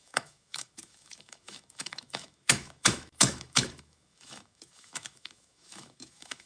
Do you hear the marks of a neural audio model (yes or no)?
yes